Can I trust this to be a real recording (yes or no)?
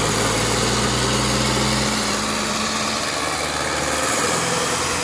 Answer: yes